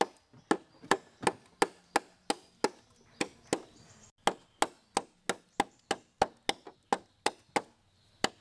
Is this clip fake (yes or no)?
no